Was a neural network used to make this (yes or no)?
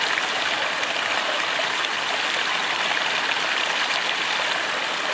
no